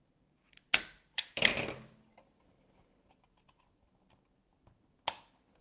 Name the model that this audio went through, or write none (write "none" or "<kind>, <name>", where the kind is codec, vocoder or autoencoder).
none